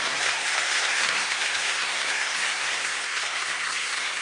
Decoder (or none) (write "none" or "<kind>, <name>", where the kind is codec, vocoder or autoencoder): codec, SNAC